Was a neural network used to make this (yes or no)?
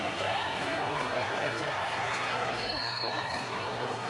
yes